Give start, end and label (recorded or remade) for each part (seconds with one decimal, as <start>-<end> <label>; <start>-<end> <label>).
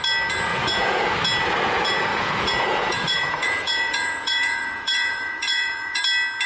0.0-0.5 recorded; 0.5-1.1 remade; 1.1-2.1 recorded; 2.1-6.0 remade; 6.0-6.5 recorded